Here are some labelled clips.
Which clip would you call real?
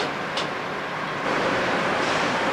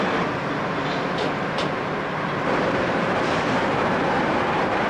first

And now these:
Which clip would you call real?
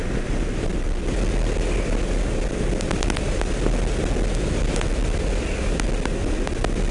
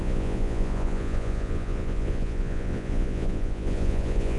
first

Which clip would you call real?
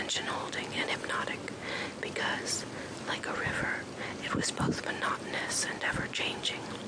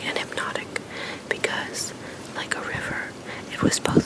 first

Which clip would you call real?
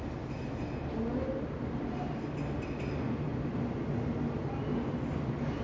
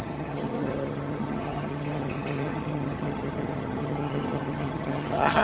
first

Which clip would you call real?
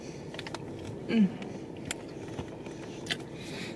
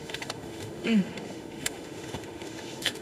first